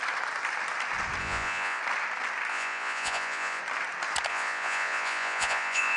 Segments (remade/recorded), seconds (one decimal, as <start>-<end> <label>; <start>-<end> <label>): 0.0-1.2 recorded; 1.2-1.8 remade; 1.8-2.5 recorded; 2.5-3.6 remade; 3.6-4.3 recorded; 4.3-6.0 remade